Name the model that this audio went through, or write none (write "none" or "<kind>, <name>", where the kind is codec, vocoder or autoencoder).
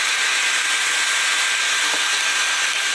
none